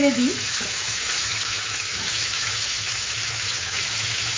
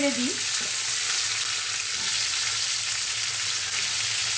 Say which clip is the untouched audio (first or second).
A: second